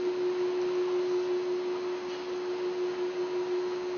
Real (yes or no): yes